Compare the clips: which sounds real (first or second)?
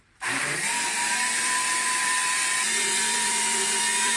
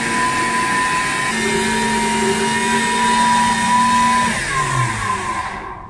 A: second